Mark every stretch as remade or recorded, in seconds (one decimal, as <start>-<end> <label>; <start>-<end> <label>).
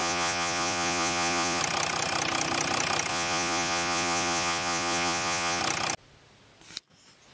0.0-1.6 remade; 1.6-3.1 recorded; 3.1-5.6 remade; 5.6-7.3 recorded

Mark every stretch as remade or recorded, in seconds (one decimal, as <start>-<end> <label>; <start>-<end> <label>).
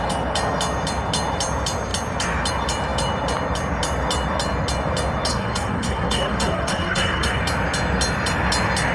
0.0-5.3 recorded; 5.3-7.4 remade; 7.4-8.9 recorded